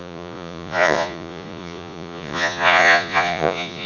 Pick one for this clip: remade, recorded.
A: remade